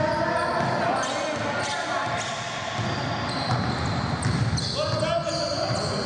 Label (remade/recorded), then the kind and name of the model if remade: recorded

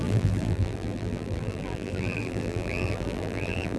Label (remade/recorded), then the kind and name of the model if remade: remade, vocoder, BigVGAN v2